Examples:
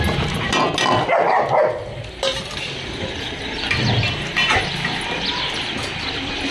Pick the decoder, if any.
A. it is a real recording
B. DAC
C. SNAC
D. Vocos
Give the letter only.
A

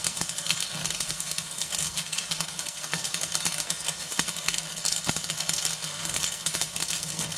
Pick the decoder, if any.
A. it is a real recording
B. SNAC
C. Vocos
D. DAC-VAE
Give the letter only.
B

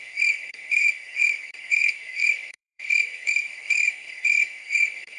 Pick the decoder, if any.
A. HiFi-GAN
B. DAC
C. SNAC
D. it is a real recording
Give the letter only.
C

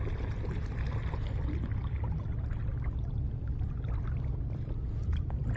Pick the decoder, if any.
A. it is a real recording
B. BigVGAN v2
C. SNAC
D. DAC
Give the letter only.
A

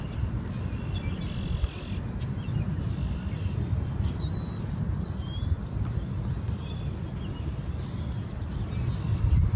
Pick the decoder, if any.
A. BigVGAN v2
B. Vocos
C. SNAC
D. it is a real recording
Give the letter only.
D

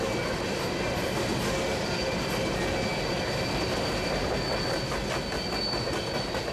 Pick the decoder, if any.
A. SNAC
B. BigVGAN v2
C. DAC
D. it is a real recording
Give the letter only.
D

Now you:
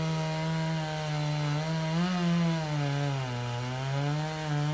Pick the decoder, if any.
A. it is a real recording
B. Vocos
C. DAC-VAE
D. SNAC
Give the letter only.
A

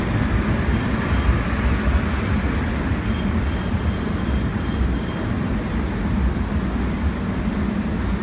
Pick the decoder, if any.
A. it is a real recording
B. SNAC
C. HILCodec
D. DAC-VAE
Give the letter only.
A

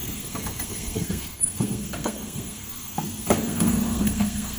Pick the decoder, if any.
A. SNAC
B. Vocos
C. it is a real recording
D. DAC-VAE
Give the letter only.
A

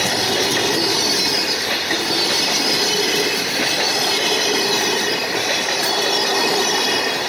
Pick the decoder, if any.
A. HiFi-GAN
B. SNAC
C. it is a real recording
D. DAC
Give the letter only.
C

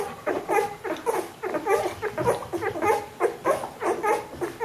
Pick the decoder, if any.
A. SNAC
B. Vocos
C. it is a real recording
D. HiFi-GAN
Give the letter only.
C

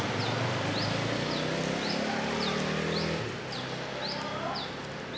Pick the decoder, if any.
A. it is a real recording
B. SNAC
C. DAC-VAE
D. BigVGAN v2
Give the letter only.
A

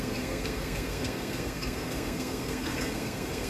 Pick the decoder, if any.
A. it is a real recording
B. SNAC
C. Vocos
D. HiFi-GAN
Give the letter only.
B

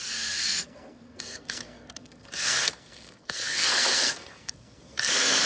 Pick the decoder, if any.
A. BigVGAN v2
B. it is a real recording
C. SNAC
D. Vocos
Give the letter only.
C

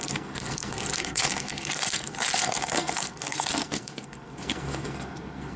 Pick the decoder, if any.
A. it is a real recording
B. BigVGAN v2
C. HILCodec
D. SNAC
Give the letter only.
D